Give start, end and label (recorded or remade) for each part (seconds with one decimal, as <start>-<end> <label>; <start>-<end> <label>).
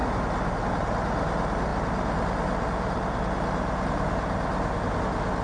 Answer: 0.0-5.4 recorded